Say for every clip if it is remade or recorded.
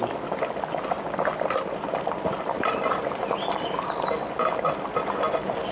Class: recorded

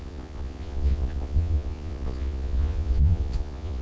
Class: remade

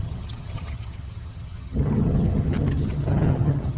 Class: remade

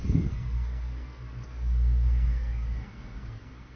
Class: remade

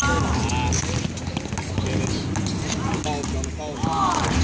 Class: recorded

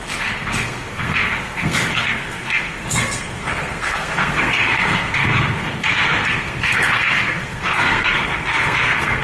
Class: remade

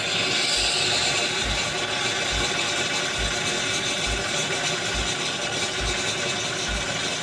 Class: recorded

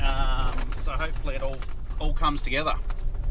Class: recorded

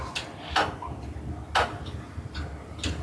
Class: recorded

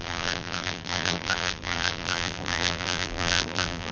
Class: remade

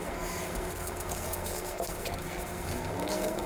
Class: remade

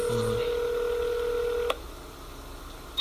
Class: recorded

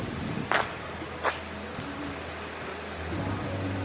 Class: recorded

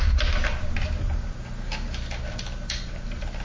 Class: recorded